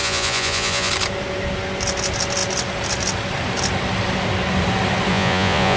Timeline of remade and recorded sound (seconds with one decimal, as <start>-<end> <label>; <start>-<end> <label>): 0.0-0.9 remade; 0.9-5.1 recorded; 5.1-5.8 remade